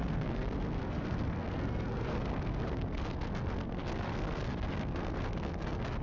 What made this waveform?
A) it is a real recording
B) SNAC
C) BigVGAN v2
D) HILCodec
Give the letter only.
B